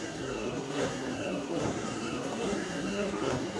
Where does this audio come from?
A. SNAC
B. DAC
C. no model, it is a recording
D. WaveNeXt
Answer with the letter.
A